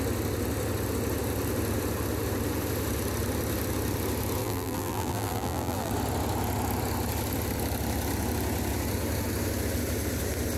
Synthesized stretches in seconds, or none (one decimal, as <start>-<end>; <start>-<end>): 4.4-5.9